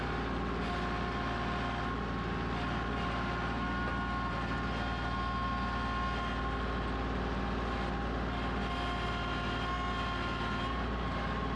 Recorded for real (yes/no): yes